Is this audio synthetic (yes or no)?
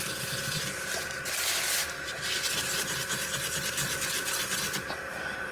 no